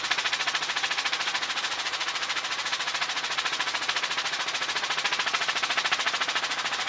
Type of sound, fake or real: fake